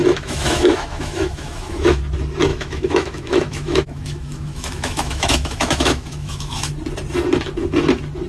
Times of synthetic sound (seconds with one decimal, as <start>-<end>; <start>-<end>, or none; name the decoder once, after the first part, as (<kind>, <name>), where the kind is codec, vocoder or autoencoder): 0.0-2.0 (autoencoder, DAC-VAE); 2.5-6.7